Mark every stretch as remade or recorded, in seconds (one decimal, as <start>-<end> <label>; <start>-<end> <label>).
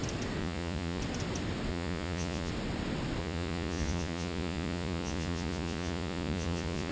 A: 0.0-0.4 recorded; 0.4-1.0 remade; 1.0-1.7 recorded; 1.7-2.5 remade; 2.5-3.2 recorded; 3.2-6.9 remade